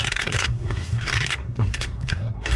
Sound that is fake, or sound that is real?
fake